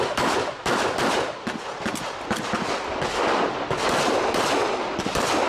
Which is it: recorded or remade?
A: recorded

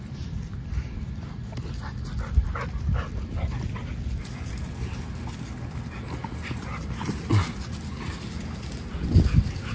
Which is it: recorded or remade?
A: recorded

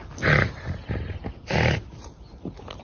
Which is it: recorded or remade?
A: recorded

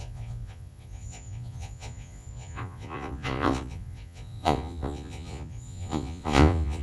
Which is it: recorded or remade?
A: remade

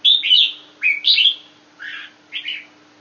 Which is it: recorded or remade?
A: recorded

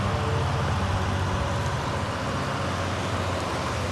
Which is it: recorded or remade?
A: recorded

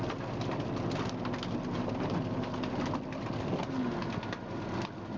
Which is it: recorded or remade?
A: recorded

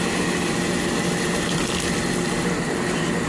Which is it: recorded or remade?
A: recorded